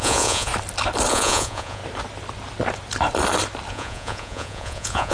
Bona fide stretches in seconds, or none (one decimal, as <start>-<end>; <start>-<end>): 0.5-1.1; 1.8-3.7